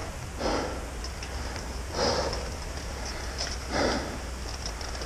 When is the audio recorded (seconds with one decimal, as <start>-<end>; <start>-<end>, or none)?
0.0-5.1